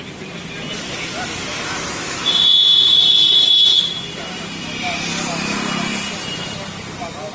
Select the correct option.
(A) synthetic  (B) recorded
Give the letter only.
B